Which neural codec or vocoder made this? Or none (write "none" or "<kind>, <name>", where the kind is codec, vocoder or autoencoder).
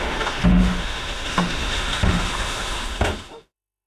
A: autoencoder, DAC-VAE